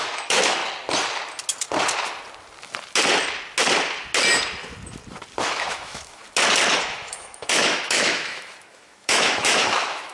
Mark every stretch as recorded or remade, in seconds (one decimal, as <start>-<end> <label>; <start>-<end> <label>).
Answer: 0.0-0.6 remade; 0.6-5.4 recorded; 5.4-6.2 remade; 6.2-6.8 recorded; 6.8-10.1 remade